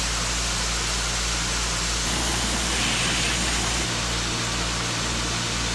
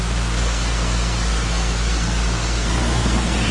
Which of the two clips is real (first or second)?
first